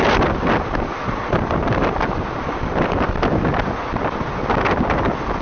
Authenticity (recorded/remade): recorded